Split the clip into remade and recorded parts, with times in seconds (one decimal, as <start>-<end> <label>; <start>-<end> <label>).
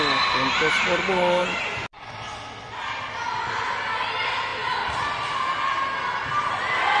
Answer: 0.0-7.0 recorded